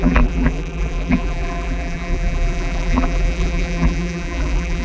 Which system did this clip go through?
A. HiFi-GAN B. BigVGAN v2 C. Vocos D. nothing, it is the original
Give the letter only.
B